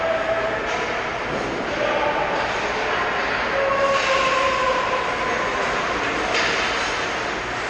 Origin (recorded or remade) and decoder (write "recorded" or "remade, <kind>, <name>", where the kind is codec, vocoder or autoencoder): recorded